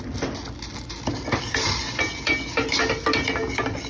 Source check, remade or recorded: recorded